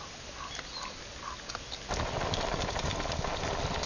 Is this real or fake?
real